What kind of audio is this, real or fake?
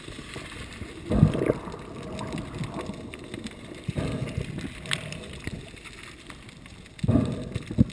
real